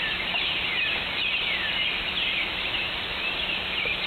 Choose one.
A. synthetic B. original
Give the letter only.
B